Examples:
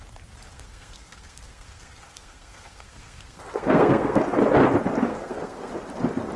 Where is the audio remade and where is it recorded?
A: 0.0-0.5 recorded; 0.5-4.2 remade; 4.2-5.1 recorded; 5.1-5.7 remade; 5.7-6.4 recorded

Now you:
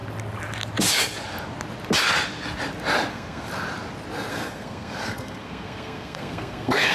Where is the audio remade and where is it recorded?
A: 0.0-3.1 recorded; 3.1-3.5 remade; 3.5-4.3 recorded; 4.3-6.9 remade

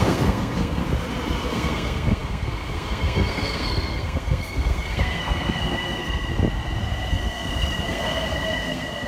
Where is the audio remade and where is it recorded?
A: 0.0-0.8 remade; 0.8-1.4 recorded; 1.4-6.3 remade; 6.3-7.1 recorded; 7.1-9.1 remade

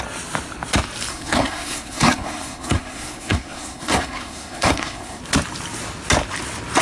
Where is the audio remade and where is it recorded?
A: 0.0-1.1 recorded; 1.1-5.2 remade; 5.2-6.8 recorded

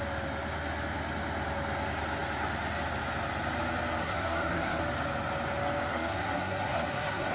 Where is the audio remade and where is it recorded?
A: 0.0-4.0 recorded; 4.0-4.8 remade; 4.8-5.9 recorded; 5.9-7.3 remade

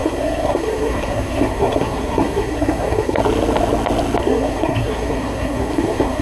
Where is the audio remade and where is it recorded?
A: 0.0-3.2 remade; 3.2-4.2 recorded; 4.2-6.2 remade